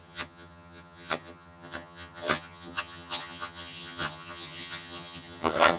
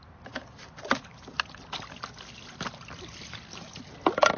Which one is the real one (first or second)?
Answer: second